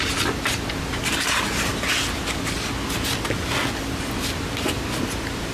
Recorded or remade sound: recorded